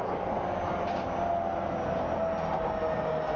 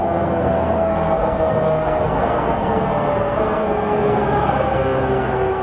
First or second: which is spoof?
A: second